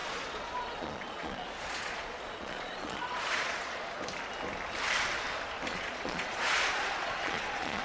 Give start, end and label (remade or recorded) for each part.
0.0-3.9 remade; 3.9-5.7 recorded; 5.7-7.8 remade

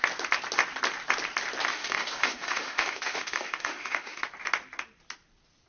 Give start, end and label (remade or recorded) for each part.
0.0-1.7 recorded; 1.7-4.2 remade; 4.2-5.7 recorded

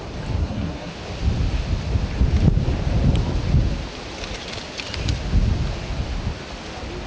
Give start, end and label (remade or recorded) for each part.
0.0-0.4 recorded; 0.4-0.9 remade; 0.9-7.1 recorded

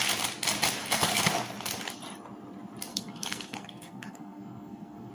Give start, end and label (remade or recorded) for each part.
0.0-0.8 recorded; 0.8-1.3 remade; 1.3-2.9 recorded; 2.9-5.1 remade

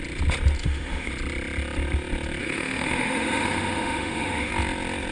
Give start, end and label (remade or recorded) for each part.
0.0-0.6 recorded; 0.6-1.1 remade; 1.1-2.4 recorded; 2.4-4.5 remade; 4.5-5.1 recorded

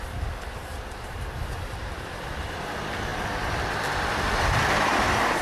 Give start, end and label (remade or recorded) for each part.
0.0-0.6 recorded; 0.6-2.6 remade; 2.6-3.1 recorded; 3.1-4.0 remade; 4.0-5.4 recorded

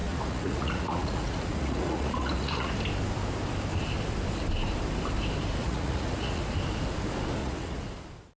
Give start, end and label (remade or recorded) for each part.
0.0-2.7 remade; 2.7-5.6 recorded; 5.6-6.4 remade; 6.4-7.4 recorded; 7.4-7.9 remade; 7.9-8.4 recorded

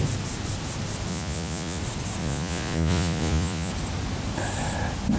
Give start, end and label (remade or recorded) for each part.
0.0-1.1 recorded; 1.1-1.8 remade; 1.8-2.2 recorded; 2.2-3.7 remade; 3.7-5.2 recorded